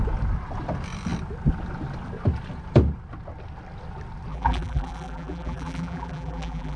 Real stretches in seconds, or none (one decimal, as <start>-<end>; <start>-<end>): 0.0-4.3